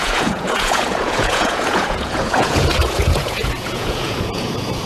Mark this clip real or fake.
fake